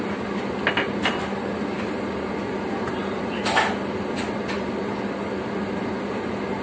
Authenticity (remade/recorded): recorded